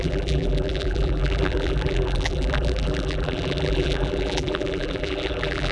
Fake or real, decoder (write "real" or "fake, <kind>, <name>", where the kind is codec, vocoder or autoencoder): fake, vocoder, BigVGAN v2